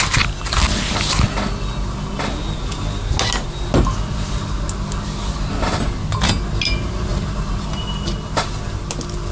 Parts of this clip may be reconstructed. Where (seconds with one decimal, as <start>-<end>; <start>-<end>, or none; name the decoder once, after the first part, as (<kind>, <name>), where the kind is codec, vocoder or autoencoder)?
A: none